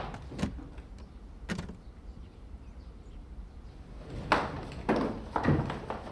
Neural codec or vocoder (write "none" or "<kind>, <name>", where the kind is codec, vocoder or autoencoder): none